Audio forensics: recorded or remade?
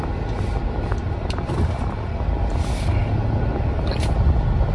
recorded